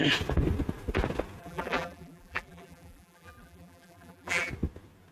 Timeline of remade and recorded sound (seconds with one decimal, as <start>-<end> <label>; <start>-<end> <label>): 0.0-1.4 recorded; 1.4-4.5 remade; 4.5-5.1 recorded